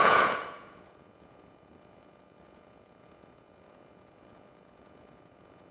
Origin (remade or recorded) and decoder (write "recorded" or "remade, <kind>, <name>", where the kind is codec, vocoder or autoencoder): remade, vocoder, Vocos